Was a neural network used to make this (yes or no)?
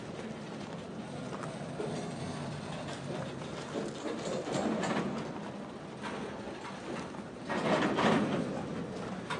no